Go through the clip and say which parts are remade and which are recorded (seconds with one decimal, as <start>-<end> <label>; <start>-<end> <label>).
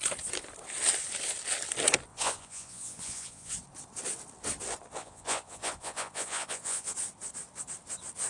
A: 0.0-2.1 recorded; 2.1-3.5 remade; 3.5-5.0 recorded; 5.0-6.9 remade; 6.9-8.3 recorded